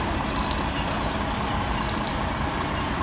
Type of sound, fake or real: real